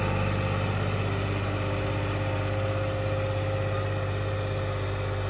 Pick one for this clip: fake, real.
real